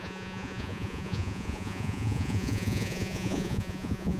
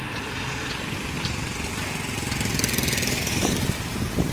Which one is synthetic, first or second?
first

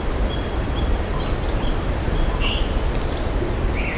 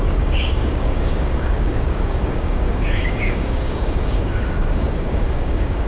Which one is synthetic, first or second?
second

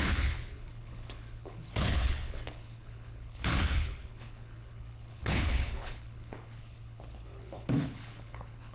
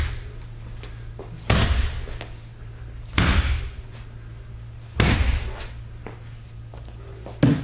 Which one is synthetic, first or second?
first